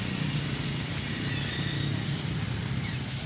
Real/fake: real